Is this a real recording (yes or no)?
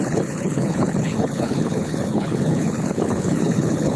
no